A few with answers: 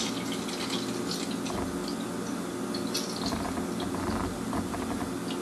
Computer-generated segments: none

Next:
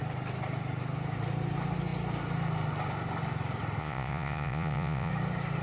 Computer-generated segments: 3.8-5.1 (vocoder, Vocos)

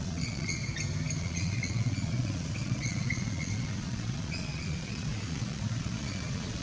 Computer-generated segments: 0.0-0.6 (vocoder, Vocos); 1.2-6.6

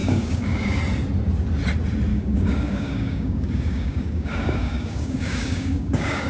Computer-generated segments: 0.0-0.8 (codec, DAC); 2.1-6.3